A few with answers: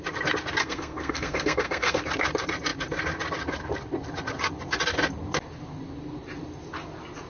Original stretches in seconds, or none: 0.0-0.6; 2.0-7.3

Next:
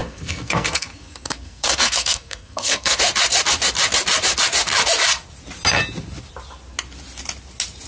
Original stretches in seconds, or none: 3.0-7.9

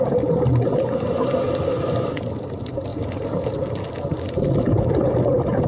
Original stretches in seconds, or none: 0.0-5.7

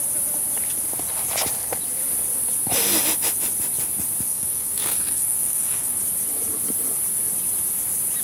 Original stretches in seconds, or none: 0.0-4.3; 6.0-8.2

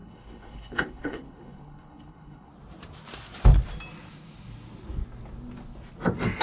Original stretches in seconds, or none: 2.5-6.4

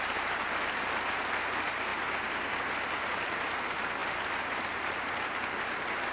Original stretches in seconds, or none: 0.0-6.1